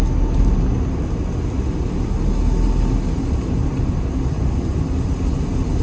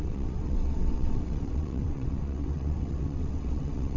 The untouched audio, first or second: first